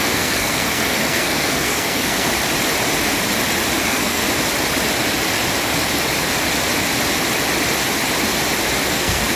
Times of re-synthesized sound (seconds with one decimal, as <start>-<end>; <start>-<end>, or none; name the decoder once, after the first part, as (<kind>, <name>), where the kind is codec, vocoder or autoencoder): 0.0-2.3 (codec, SNAC); 3.8-4.2; 8.9-9.4